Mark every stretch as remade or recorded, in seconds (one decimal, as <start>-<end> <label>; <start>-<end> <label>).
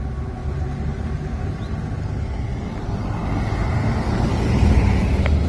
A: 0.0-5.5 recorded